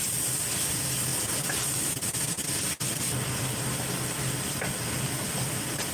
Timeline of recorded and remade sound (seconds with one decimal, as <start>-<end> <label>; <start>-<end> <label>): 0.0-5.9 recorded